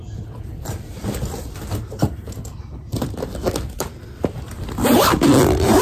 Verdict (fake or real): fake